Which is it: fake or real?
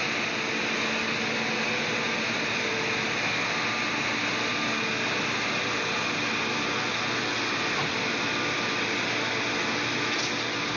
real